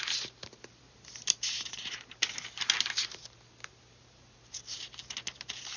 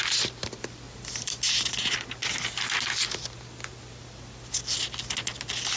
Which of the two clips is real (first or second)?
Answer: second